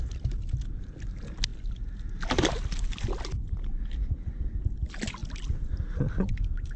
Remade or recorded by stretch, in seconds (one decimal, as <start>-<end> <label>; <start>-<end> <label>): 0.0-6.8 recorded